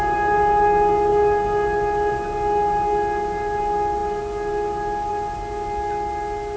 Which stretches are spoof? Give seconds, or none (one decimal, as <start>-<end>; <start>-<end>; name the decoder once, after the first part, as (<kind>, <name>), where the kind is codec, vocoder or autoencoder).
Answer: none